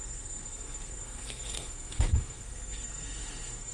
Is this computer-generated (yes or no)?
yes